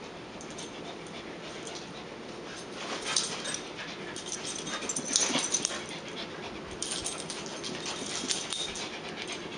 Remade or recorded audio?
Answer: recorded